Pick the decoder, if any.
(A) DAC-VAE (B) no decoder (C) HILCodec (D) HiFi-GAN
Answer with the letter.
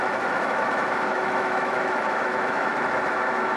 A